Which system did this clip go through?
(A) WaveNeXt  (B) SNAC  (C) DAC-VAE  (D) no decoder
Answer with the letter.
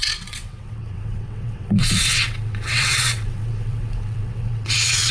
A